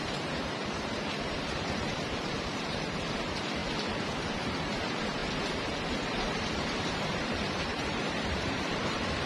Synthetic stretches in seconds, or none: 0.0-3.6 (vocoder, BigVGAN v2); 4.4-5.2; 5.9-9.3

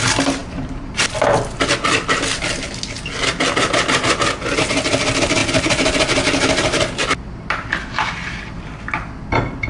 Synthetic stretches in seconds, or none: 0.4-1.0 (vocoder, BigVGAN v2)